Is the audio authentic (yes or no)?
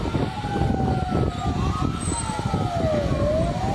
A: yes